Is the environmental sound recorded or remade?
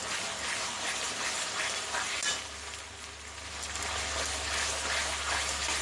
recorded